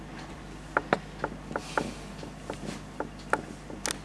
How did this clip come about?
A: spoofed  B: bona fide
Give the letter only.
B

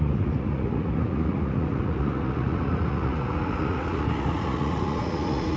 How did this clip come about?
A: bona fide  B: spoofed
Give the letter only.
B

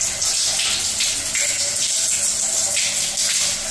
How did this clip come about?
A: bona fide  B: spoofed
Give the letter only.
A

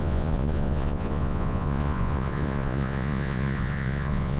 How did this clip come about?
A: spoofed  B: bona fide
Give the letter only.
A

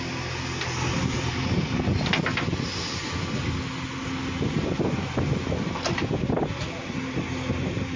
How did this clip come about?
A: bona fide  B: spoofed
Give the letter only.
A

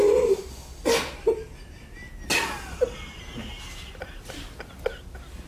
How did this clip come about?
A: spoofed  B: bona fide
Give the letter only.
B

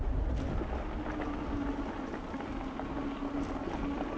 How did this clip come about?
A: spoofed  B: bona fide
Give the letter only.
B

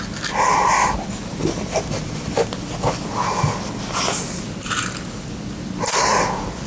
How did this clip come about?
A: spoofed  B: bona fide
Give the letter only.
B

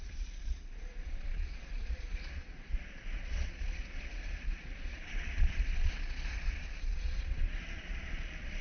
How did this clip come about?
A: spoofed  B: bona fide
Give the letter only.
A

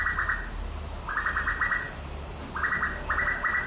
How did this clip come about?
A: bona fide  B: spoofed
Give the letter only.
A